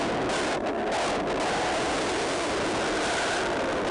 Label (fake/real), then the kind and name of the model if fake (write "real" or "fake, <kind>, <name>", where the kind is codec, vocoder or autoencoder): real